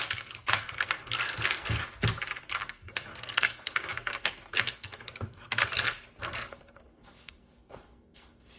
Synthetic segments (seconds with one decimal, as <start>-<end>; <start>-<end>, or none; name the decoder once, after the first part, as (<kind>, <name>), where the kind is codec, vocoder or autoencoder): 0.0-1.8 (codec, SNAC); 2.5-8.6